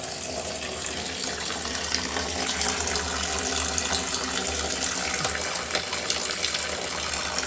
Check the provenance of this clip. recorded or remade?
recorded